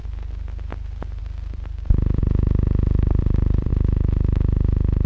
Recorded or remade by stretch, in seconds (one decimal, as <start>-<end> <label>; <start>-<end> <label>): 0.0-1.2 recorded; 1.2-2.2 remade; 2.2-3.2 recorded; 3.2-3.7 remade; 3.7-5.1 recorded